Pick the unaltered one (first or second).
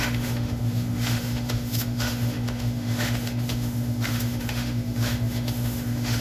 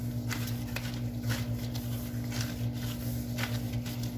second